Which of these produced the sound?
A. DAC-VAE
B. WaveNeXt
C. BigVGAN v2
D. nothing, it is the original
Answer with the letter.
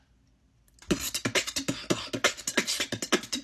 D